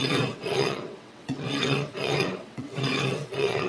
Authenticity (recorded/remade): remade